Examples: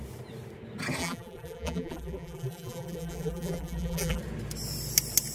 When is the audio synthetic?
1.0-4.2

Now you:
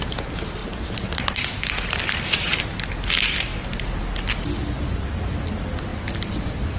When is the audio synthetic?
0.6-2.9

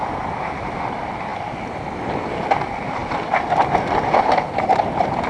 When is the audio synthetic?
none

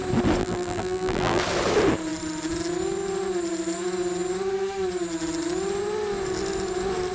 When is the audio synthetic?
0.4-1.4

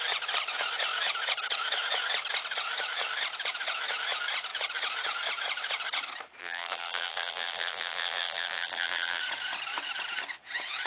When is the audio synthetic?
6.4-9.2